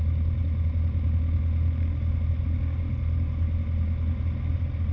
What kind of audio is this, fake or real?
real